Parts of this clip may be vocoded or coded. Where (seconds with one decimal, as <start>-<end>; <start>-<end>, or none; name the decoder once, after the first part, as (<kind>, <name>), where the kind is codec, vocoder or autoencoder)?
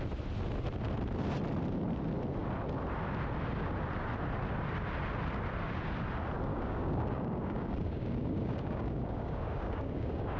6.5-10.4 (codec, DAC)